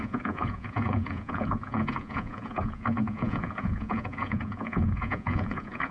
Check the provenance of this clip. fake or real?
fake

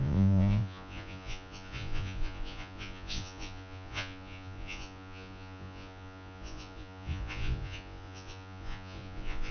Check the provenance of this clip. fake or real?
fake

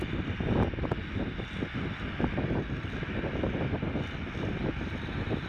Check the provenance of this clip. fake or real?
real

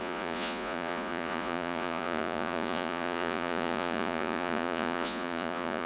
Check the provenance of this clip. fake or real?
fake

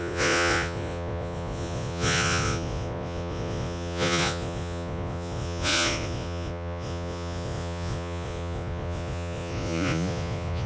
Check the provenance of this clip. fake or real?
fake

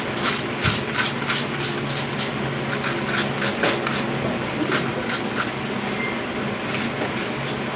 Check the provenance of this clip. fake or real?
real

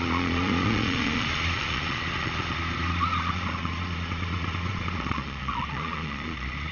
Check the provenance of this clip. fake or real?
fake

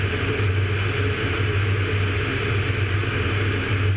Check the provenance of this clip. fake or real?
real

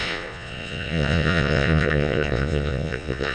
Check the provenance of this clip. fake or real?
fake